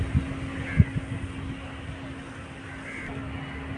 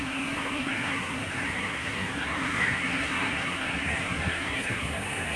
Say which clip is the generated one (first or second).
second